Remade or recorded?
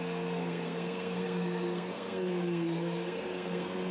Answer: remade